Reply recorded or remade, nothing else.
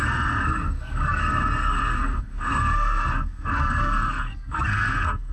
remade